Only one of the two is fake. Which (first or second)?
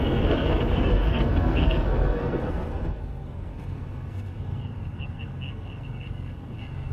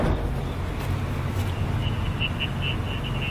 first